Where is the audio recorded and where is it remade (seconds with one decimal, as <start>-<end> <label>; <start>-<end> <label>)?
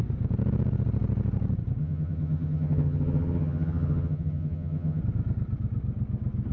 0.0-1.8 recorded; 1.8-5.0 remade; 5.0-6.5 recorded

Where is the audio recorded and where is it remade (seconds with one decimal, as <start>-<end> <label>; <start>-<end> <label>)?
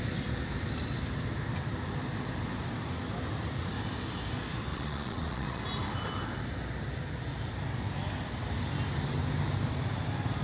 0.0-4.7 recorded; 4.7-5.6 remade; 5.6-10.4 recorded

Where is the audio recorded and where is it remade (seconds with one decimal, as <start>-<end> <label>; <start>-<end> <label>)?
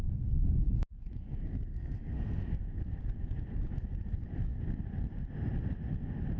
0.0-1.7 recorded; 1.7-2.6 remade; 2.6-6.4 recorded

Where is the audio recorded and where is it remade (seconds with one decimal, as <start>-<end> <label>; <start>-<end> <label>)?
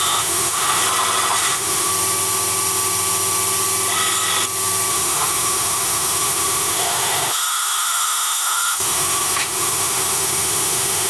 0.0-0.8 remade; 0.8-1.4 recorded; 1.4-1.9 remade; 1.9-4.9 recorded; 4.9-11.1 remade